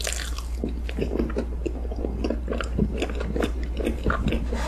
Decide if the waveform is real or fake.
real